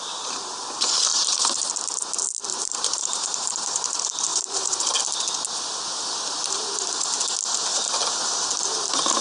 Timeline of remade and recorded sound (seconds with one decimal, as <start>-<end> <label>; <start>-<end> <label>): 0.0-1.1 recorded; 1.1-1.7 remade; 1.7-2.5 recorded; 2.5-3.8 remade; 3.8-4.3 recorded; 4.3-5.0 remade; 5.0-9.2 recorded